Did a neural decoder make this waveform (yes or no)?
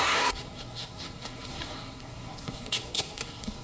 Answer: yes